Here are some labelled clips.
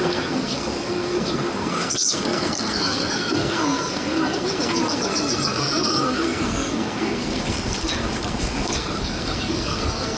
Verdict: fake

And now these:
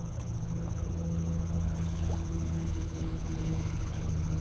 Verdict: fake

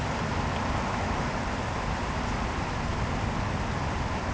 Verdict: real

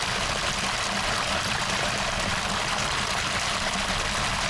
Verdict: real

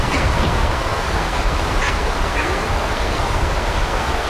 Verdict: fake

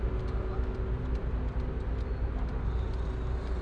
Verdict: real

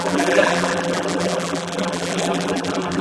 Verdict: fake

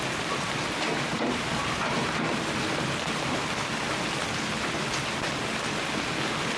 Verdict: real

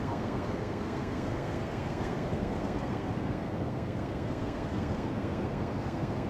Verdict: fake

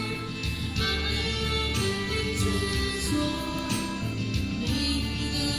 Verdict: real